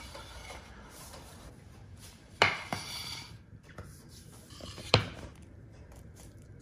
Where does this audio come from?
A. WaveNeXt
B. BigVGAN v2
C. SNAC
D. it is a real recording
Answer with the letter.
B